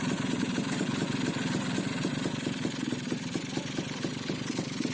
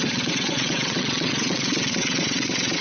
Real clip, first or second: first